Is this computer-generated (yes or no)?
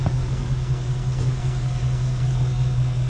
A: yes